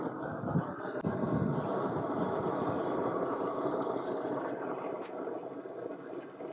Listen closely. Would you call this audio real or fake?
real